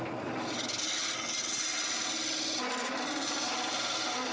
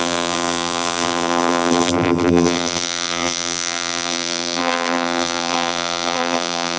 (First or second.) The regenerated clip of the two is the second